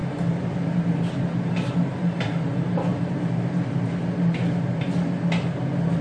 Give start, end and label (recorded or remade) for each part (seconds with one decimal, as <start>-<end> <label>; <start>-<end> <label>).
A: 0.0-6.0 recorded